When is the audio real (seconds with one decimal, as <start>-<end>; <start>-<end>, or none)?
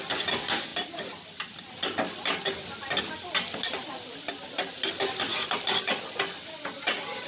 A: 0.0-7.3